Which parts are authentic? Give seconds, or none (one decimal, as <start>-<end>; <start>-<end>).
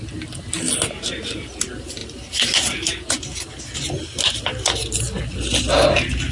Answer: 0.0-6.3